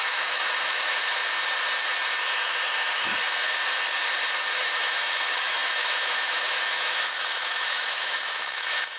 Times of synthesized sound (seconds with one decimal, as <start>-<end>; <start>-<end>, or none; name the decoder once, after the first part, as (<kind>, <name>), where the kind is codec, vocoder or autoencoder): 0.0-1.2 (autoencoder, DAC-VAE); 2.3-3.1; 4.4-9.0